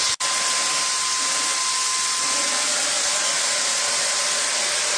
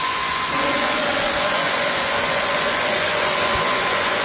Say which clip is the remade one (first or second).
second